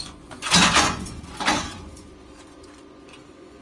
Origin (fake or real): fake